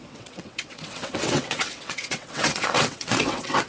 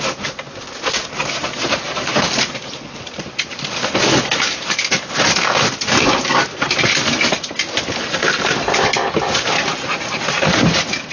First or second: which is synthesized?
first